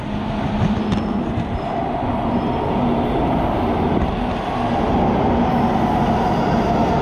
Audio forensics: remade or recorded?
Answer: recorded